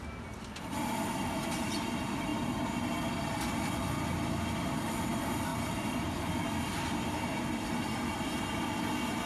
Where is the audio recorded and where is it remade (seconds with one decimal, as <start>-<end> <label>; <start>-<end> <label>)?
0.0-9.3 recorded